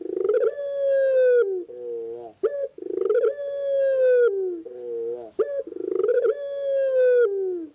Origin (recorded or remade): recorded